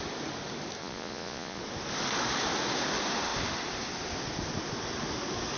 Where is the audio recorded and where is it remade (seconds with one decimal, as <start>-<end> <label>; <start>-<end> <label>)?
0.0-0.8 recorded; 0.8-1.6 remade; 1.6-5.6 recorded